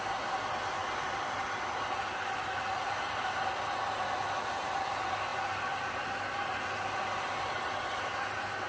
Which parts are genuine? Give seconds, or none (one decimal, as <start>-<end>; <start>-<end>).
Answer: 0.0-8.7